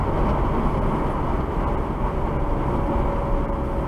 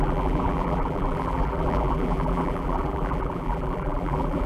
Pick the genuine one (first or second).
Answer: first